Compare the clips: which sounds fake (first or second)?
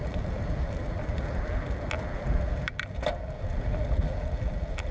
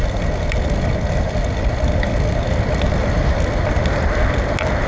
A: first